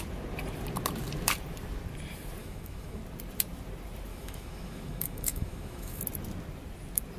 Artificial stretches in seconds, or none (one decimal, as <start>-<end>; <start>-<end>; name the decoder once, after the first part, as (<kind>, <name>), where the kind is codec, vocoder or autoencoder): 2.4-3.0 (autoencoder, DAC-VAE); 4.1-6.0